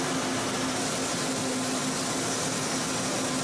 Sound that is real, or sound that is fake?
real